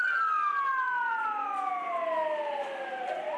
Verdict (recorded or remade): recorded